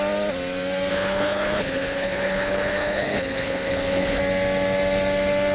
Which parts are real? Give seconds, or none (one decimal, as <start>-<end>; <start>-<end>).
0.0-0.9; 4.2-5.5